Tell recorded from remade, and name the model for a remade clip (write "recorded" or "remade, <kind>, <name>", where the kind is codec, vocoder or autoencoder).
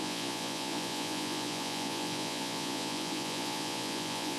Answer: remade, vocoder, Vocos